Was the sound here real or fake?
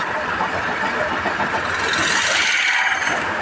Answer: real